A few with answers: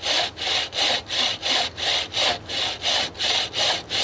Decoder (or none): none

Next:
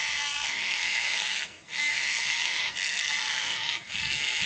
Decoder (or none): codec, SNAC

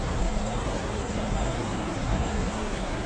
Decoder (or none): codec, SNAC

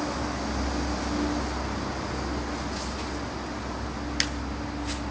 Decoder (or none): none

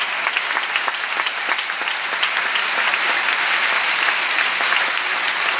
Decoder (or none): none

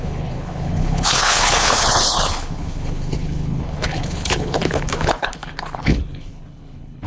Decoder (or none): codec, HILCodec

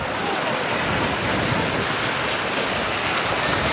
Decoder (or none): none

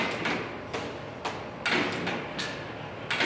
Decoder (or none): none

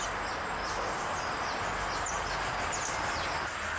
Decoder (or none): none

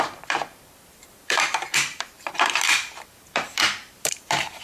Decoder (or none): vocoder, BigVGAN v2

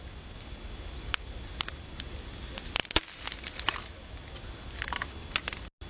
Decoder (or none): none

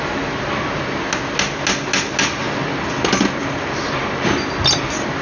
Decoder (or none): none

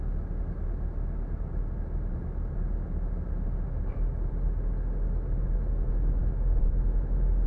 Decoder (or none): none